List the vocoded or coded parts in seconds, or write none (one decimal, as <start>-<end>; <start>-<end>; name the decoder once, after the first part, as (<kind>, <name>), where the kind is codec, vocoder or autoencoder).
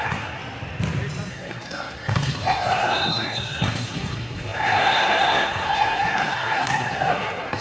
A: 0.0-0.4 (codec, SNAC); 1.3-7.6